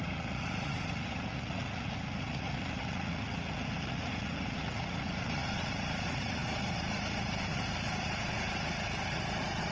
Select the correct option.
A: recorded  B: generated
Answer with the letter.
B